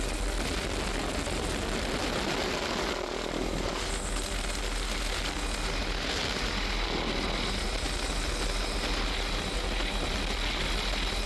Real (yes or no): yes